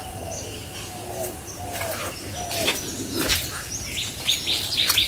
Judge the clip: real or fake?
real